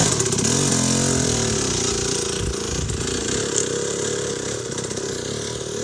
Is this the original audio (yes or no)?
yes